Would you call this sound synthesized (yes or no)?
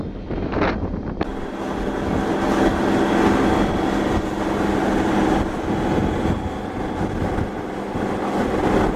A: no